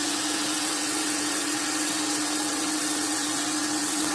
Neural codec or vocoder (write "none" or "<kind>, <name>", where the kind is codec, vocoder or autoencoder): vocoder, WaveNeXt